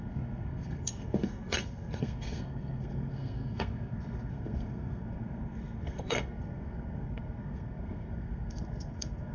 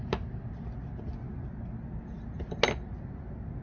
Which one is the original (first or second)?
second